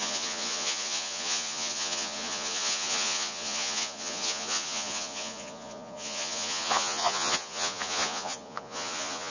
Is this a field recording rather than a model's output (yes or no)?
no